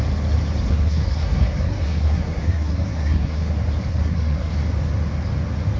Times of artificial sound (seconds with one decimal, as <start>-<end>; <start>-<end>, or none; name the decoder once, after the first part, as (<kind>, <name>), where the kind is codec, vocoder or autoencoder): 0.7-3.5 (codec, SNAC); 3.9-4.5